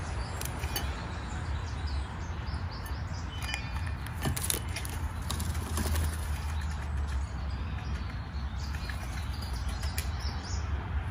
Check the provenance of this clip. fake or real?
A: real